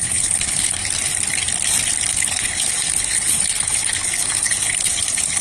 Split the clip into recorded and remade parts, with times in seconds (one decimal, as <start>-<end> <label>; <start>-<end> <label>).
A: 0.0-0.8 remade; 0.8-2.1 recorded; 2.1-5.4 remade